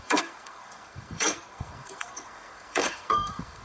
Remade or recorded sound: remade